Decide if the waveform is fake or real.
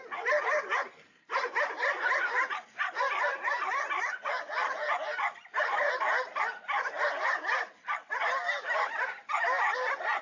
real